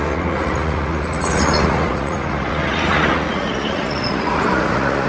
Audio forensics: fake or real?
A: fake